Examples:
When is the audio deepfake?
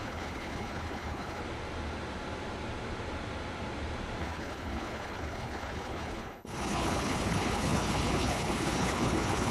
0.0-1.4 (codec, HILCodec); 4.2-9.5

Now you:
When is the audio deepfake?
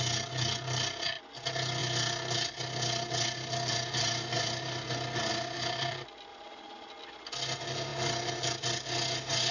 6.3-6.9 (vocoder, Vocos)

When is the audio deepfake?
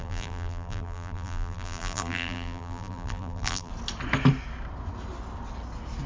0.0-3.7 (vocoder, BigVGAN v2)